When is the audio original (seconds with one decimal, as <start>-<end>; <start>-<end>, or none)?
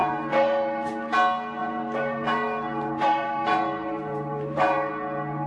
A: 0.9-1.6; 4.9-5.5